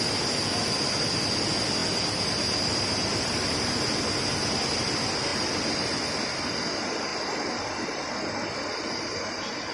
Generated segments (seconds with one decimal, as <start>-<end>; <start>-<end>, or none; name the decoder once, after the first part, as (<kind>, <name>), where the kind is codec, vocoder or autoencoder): none